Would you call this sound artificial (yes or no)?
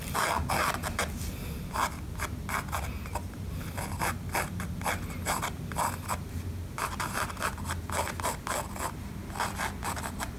no